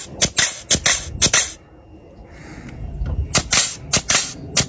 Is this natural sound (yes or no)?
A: yes